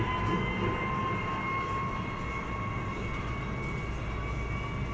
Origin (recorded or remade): recorded